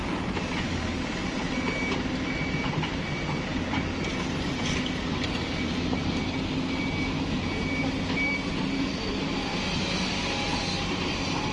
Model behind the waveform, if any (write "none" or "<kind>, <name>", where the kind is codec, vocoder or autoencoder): none